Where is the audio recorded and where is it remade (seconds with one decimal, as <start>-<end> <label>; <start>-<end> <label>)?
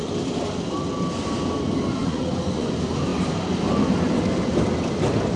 0.0-2.0 recorded; 2.0-2.7 remade; 2.7-5.4 recorded